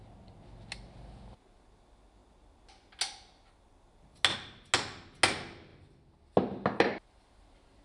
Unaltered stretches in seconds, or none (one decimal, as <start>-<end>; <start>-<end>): 0.0-7.8